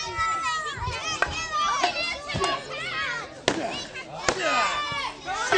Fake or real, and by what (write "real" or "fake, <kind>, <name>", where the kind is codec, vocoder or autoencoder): real